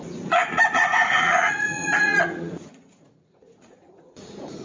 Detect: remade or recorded remade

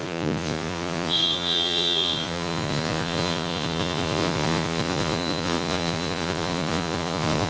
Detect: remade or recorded remade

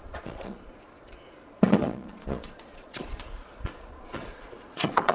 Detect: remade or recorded remade